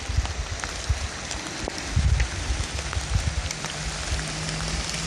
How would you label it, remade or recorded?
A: recorded